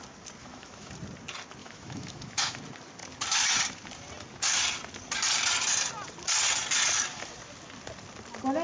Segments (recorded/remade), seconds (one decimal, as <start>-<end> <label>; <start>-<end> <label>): 0.0-0.4 recorded; 0.4-0.9 remade; 0.9-1.6 recorded; 1.6-2.6 remade; 2.6-8.6 recorded